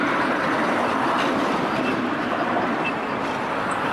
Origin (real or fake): fake